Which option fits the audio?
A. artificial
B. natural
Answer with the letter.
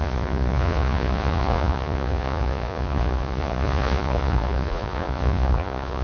A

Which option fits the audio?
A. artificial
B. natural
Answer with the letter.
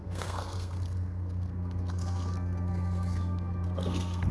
A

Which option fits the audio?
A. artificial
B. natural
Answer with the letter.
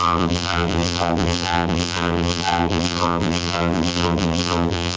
A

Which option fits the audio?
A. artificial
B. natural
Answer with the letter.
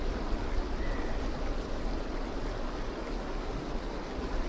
B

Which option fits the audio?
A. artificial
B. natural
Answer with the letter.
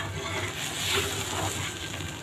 B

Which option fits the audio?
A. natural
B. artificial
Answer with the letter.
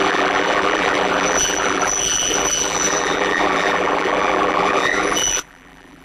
B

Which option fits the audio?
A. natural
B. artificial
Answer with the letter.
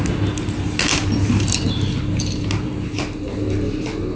A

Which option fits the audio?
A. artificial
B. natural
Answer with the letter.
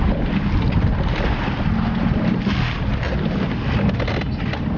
B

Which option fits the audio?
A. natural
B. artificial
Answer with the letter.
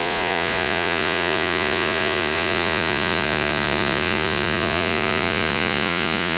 B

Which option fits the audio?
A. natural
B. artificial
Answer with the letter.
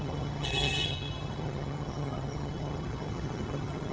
B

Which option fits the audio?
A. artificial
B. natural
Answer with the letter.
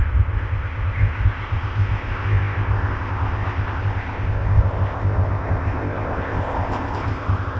A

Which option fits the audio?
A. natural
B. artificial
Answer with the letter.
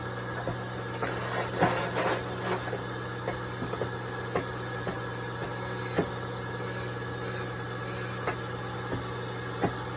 A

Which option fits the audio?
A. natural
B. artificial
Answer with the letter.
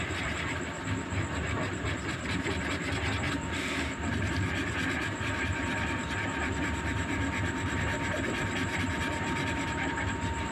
B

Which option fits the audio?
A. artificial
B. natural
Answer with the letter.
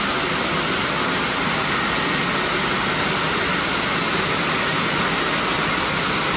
B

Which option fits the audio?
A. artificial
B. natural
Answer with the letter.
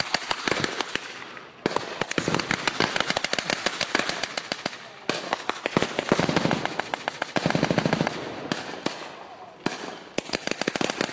B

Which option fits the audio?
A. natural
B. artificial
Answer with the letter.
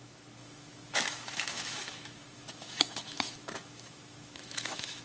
B